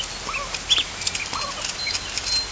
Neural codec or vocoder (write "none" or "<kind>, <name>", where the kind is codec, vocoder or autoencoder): none